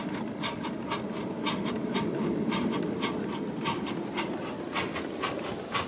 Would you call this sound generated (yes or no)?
no